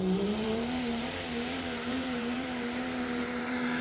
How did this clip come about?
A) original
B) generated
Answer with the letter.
B